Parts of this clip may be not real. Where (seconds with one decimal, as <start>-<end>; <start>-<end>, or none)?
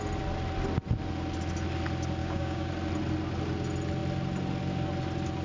2.2-2.7